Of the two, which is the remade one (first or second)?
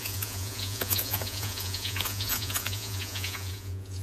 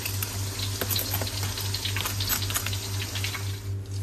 first